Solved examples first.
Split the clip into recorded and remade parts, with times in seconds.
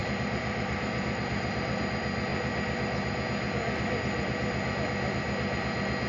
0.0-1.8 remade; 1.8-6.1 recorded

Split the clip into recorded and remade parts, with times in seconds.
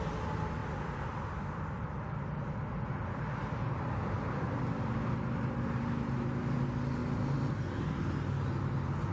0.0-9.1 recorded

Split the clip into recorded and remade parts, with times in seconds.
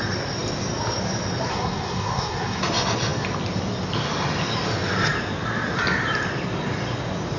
0.0-1.5 recorded; 1.5-2.6 remade; 2.6-7.4 recorded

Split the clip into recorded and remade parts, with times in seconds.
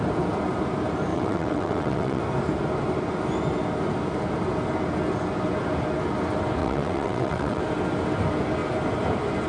0.0-1.1 recorded; 1.1-2.2 remade; 2.2-6.6 recorded; 6.6-7.6 remade; 7.6-9.5 recorded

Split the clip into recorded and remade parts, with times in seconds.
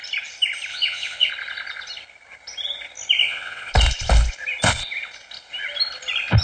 0.0-0.7 recorded; 0.7-1.3 remade; 1.3-3.2 recorded; 3.2-3.7 remade; 3.7-6.4 recorded